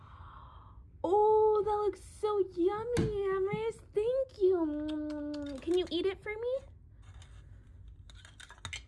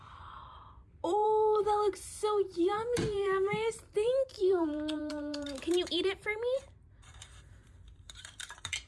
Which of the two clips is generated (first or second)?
second